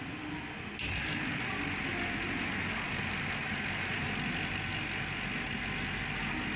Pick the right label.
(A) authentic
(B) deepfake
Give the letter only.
A